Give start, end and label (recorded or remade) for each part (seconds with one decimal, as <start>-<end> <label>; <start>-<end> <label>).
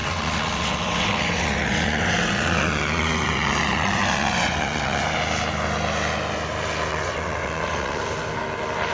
0.0-5.0 remade; 5.0-6.9 recorded; 6.9-8.0 remade; 8.0-8.9 recorded